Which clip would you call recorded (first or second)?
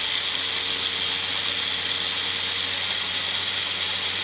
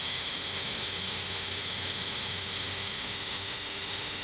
first